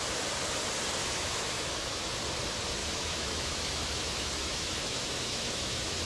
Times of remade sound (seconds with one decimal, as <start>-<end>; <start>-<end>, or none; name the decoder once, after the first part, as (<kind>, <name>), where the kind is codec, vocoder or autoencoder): 1.0-2.1 (autoencoder, DAC-VAE); 2.8-6.0